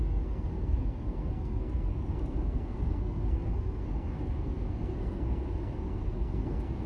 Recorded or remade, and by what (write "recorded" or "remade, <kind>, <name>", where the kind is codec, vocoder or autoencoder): remade, codec, SNAC